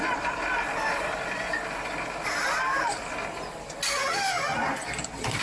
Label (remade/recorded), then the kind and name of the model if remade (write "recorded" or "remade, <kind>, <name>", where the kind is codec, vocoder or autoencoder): recorded